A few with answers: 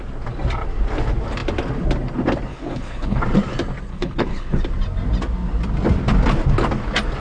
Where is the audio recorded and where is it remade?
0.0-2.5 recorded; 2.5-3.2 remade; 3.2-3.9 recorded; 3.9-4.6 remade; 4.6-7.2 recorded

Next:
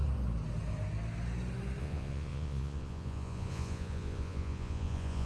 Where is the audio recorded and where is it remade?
0.0-1.8 recorded; 1.8-5.3 remade